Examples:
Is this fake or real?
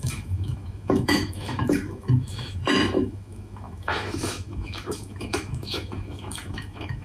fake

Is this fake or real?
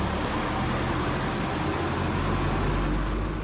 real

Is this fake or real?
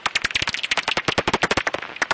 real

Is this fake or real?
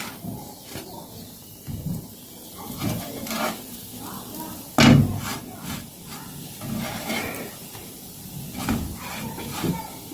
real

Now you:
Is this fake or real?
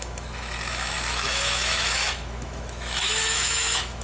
fake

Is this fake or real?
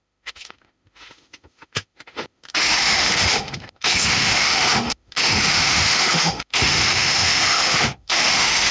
fake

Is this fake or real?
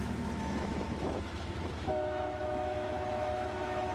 fake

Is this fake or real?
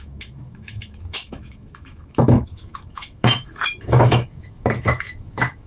fake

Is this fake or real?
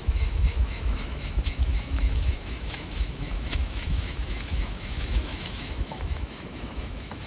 fake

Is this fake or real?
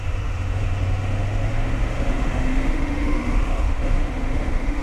fake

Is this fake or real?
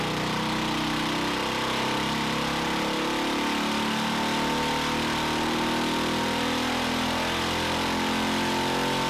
real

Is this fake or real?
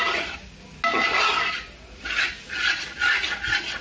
real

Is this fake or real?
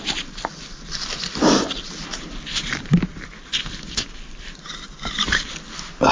real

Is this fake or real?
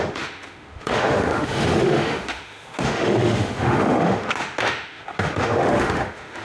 fake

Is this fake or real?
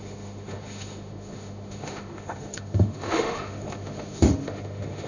fake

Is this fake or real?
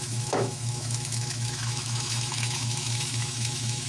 fake